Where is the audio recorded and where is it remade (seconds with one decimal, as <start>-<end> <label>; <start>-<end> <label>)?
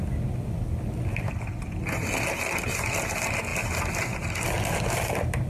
0.0-5.5 recorded